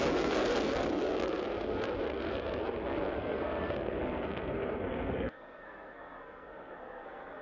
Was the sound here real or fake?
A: fake